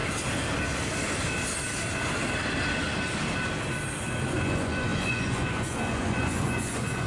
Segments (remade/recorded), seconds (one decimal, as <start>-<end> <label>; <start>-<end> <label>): 0.0-4.3 recorded; 4.3-7.1 remade

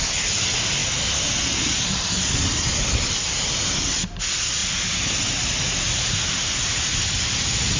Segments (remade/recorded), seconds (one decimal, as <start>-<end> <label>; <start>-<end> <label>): 0.0-7.8 recorded